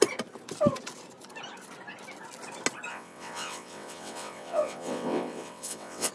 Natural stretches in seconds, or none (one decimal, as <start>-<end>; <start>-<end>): 0.0-2.9